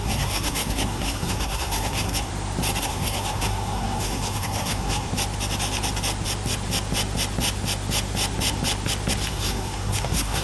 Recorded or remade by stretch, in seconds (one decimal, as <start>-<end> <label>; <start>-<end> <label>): 0.0-2.3 remade; 2.3-2.8 recorded; 2.8-5.1 remade; 5.1-9.3 recorded; 9.3-10.4 remade